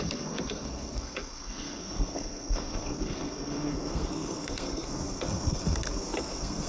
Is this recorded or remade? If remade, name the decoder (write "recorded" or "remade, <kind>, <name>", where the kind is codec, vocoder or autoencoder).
remade, codec, SNAC